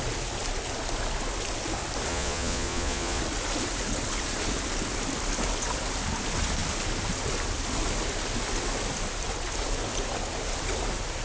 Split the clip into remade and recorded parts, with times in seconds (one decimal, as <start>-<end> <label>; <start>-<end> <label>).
0.0-2.1 recorded; 2.1-3.2 remade; 3.2-11.2 recorded